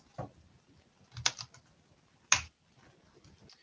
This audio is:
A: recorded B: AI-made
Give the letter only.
A